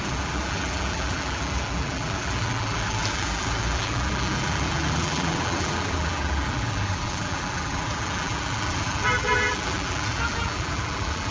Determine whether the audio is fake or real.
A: fake